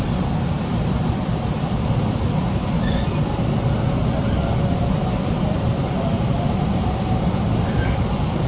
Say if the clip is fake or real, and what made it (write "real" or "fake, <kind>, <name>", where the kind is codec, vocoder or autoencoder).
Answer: fake, vocoder, BigVGAN v2